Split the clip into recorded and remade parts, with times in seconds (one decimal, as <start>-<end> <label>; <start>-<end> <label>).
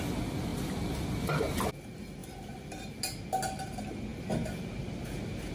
0.0-5.5 recorded